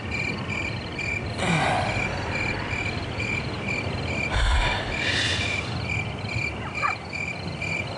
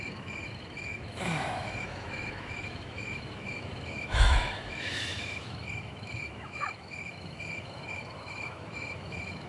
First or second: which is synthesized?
second